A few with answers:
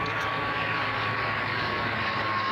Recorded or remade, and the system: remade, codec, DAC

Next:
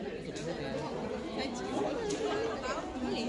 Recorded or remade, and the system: recorded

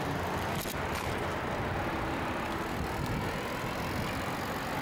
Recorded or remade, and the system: recorded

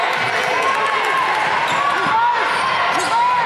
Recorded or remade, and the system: recorded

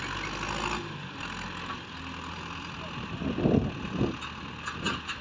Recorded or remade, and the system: recorded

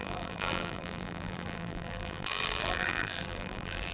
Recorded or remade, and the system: remade, vocoder, BigVGAN v2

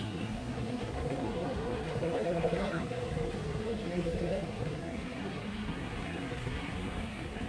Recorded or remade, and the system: remade, codec, SNAC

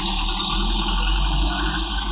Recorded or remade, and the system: recorded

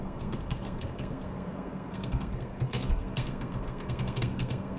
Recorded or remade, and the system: remade, codec, SNAC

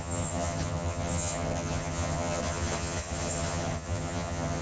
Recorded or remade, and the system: remade, vocoder, HiFi-GAN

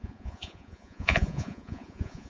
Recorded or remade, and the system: remade, vocoder, Vocos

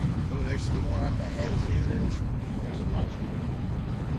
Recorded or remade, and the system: remade, codec, HILCodec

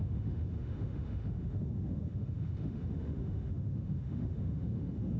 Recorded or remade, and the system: remade, autoencoder, DAC-VAE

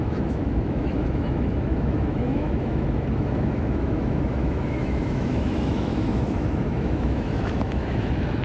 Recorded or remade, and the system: remade, autoencoder, DAC-VAE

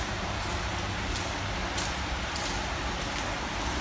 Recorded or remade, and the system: recorded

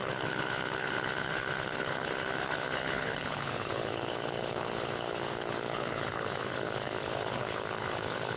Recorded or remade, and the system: remade, codec, HILCodec